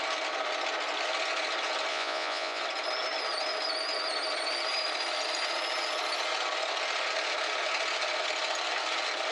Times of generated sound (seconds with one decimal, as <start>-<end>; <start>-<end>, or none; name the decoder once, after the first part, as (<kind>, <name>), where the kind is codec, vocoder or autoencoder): 1.9-2.6 (vocoder, Vocos)